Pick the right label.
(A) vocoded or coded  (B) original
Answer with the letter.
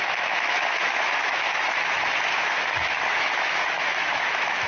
A